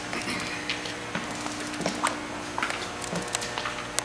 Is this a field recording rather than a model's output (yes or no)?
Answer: yes